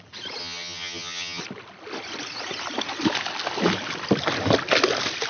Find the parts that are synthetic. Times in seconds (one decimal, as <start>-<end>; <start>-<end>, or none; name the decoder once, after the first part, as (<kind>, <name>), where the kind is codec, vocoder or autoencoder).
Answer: 0.4-1.4 (vocoder, HiFi-GAN)